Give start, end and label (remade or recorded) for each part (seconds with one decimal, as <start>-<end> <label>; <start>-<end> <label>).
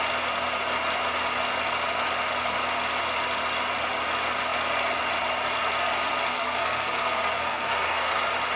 0.0-6.3 recorded; 6.3-8.2 remade; 8.2-8.6 recorded